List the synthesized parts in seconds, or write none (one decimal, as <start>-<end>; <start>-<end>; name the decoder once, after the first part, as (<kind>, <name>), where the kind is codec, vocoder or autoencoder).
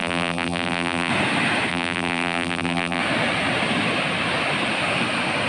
0.0-1.1 (vocoder, BigVGAN v2); 1.7-3.0